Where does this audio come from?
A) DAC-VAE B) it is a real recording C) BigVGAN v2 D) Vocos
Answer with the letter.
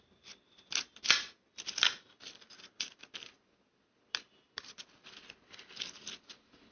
B